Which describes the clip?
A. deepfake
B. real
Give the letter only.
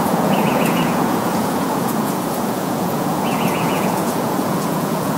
A